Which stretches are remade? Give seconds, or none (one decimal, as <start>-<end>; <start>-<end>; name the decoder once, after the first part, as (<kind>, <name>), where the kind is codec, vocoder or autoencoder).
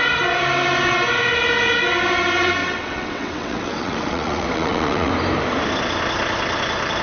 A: 2.6-5.1 (vocoder, WaveNeXt)